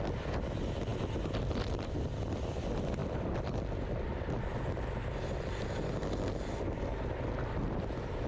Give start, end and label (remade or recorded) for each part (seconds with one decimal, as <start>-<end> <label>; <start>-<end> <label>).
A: 0.0-0.9 recorded; 0.9-2.5 remade; 2.5-3.0 recorded; 3.0-4.6 remade; 4.6-8.3 recorded